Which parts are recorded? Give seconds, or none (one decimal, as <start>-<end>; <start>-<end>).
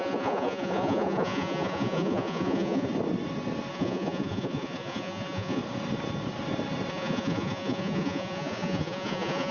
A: 2.9-3.7; 5.6-6.9